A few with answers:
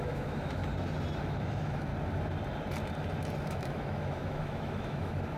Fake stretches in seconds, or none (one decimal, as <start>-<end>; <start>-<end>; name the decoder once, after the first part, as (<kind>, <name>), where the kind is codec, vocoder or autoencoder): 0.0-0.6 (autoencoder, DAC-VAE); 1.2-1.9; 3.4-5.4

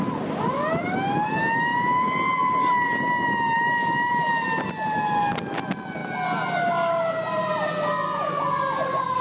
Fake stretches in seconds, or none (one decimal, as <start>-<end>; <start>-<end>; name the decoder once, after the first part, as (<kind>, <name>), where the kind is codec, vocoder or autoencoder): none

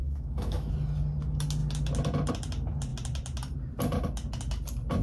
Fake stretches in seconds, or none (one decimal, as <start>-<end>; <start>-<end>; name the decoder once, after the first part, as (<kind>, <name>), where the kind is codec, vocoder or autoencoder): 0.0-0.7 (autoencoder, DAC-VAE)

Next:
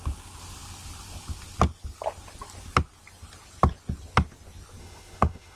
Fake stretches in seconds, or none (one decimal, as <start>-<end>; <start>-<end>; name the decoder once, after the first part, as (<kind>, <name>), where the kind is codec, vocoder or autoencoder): 4.8-5.6 (autoencoder, DAC-VAE)